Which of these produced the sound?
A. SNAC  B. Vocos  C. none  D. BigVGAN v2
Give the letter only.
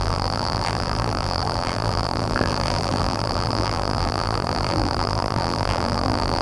D